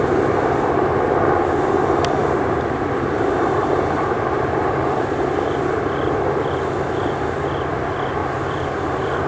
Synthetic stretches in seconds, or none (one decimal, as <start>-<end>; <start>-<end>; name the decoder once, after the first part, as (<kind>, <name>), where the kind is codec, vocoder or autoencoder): 2.2-5.3 (vocoder, BigVGAN v2); 8.2-9.3